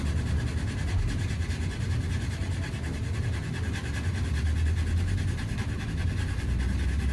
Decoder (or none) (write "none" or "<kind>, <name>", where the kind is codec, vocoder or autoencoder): none